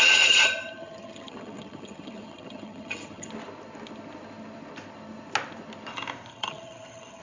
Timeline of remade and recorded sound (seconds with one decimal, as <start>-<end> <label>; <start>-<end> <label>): 0.0-3.3 remade; 3.3-6.3 recorded; 6.3-7.2 remade